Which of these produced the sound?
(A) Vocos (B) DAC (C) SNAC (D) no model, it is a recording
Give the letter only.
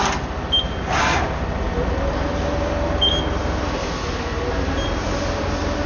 D